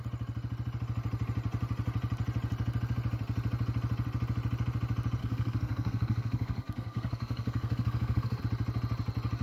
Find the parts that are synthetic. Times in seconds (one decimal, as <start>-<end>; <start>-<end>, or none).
5.2-8.4